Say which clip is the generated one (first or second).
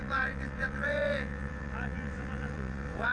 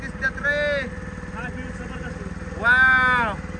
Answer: first